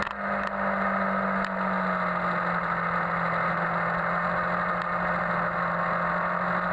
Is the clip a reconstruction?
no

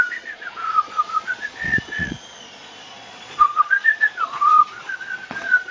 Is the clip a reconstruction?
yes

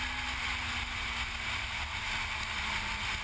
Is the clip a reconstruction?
no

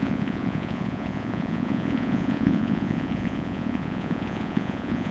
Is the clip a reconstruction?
yes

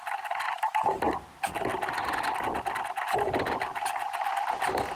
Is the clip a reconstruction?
no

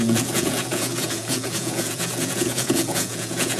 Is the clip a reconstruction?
yes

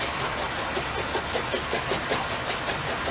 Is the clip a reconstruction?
no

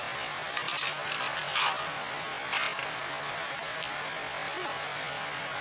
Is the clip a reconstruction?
no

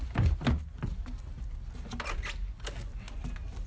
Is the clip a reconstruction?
no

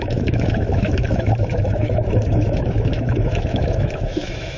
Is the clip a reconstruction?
yes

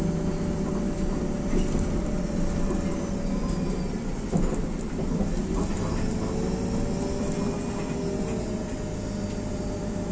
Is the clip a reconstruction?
no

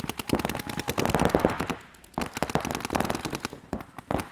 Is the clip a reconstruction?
no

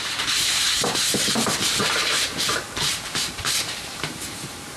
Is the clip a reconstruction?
yes